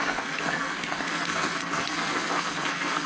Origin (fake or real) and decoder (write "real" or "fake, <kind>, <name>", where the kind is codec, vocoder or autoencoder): fake, codec, SNAC